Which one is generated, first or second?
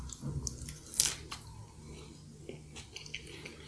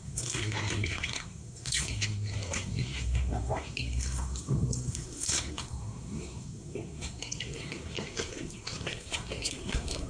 second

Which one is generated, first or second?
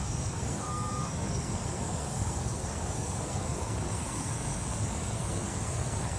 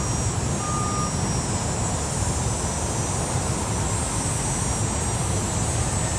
first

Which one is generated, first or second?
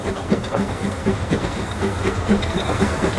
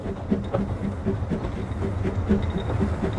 first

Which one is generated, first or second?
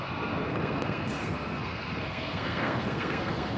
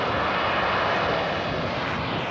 first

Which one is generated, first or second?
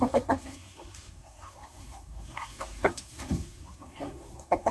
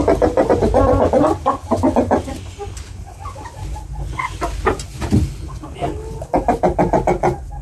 first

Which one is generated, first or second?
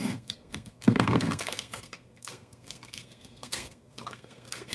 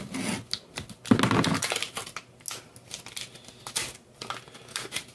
first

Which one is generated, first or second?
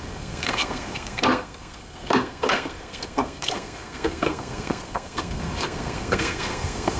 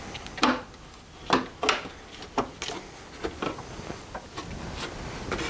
first